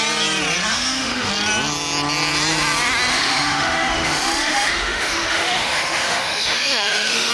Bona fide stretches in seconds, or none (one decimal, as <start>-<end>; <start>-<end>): 0.0-0.7; 1.3-3.1